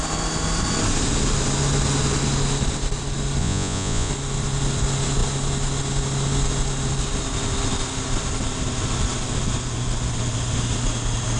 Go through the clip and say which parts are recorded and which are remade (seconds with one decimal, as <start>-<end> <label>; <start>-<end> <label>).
0.0-3.4 recorded; 3.4-4.1 remade; 4.1-11.4 recorded